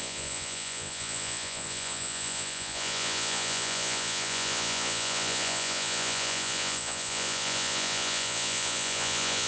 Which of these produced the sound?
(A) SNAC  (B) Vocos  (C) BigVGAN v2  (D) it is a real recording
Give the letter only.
B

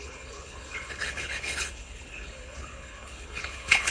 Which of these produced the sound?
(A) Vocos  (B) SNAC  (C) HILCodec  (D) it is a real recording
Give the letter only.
C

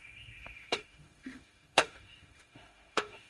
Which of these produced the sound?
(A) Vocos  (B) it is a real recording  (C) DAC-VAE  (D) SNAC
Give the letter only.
C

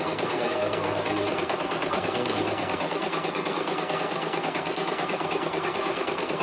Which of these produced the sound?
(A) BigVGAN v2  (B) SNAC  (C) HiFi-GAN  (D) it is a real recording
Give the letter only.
B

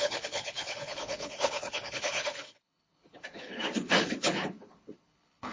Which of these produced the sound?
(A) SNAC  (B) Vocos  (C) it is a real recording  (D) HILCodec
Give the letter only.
D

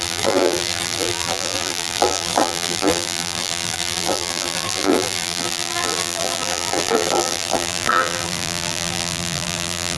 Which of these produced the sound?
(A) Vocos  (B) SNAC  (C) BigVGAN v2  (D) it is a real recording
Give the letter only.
C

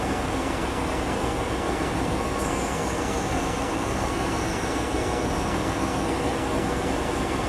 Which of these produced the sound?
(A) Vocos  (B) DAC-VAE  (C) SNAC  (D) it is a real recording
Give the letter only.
C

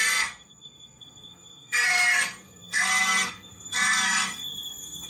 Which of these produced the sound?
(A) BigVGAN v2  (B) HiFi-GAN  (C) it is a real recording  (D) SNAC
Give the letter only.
D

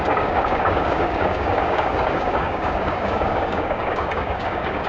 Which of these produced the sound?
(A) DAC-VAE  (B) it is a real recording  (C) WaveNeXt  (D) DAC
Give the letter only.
D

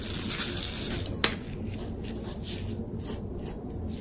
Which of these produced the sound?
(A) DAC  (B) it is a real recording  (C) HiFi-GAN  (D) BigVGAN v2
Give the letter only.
B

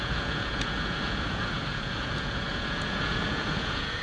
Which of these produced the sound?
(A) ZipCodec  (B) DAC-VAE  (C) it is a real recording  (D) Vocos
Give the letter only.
D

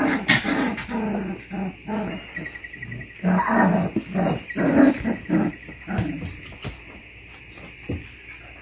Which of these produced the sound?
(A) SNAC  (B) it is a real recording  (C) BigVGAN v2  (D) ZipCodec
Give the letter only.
B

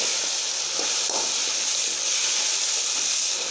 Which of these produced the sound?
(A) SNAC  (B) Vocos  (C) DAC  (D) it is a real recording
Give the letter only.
D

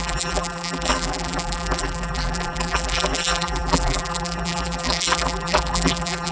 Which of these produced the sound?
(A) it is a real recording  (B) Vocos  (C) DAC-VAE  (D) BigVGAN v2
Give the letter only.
D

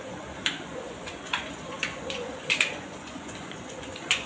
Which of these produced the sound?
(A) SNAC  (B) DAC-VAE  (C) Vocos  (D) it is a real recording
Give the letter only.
C